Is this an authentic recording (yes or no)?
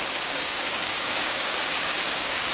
no